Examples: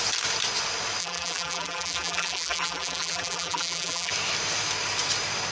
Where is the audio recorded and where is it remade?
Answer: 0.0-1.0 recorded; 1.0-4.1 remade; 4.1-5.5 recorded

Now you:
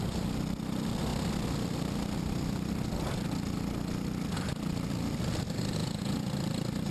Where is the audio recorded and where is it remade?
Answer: 0.0-5.8 recorded; 5.8-6.3 remade; 6.3-6.9 recorded

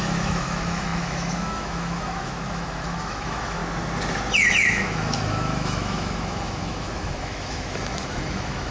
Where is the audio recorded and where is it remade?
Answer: 0.0-3.6 remade; 3.6-4.3 recorded; 4.3-8.7 remade